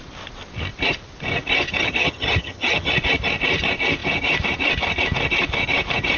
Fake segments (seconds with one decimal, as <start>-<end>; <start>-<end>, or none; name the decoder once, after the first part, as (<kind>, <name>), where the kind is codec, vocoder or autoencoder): 1.8-2.9 (vocoder, HiFi-GAN)